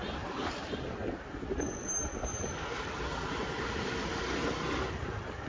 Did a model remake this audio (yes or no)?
no